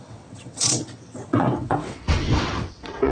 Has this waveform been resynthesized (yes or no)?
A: yes